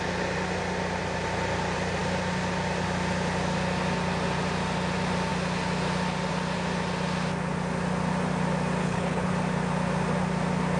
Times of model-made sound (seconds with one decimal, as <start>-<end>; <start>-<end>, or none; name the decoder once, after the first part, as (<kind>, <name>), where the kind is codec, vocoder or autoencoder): 8.8-9.3 (codec, HILCodec)